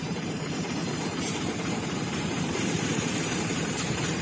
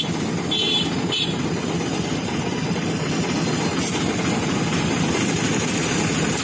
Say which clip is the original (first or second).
second